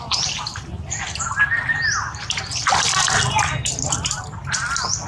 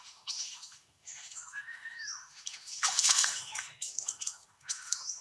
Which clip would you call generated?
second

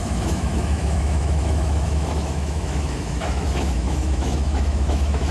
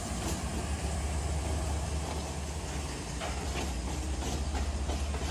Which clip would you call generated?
first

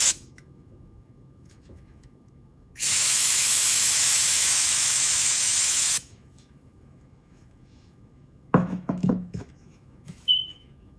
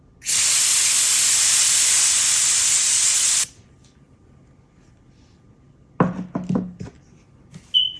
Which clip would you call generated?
first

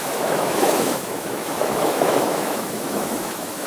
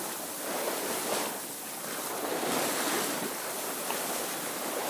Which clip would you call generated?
first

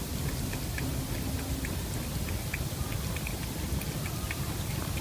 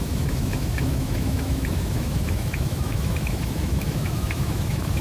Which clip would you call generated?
second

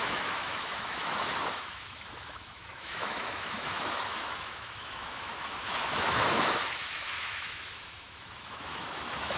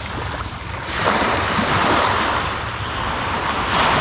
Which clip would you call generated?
first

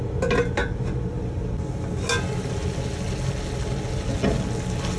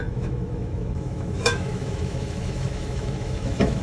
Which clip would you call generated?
second